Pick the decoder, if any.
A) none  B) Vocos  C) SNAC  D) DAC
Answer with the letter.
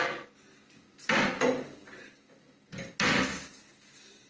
A